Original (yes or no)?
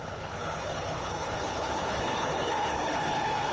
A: no